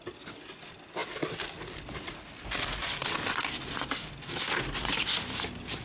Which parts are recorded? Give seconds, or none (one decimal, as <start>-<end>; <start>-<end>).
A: 0.0-5.8